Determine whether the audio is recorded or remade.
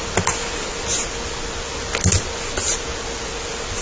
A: recorded